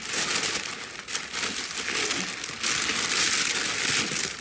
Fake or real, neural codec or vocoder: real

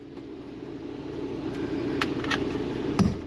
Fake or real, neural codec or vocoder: real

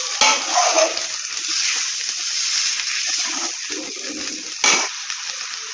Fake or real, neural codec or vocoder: real